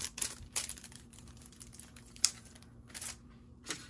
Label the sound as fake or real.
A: fake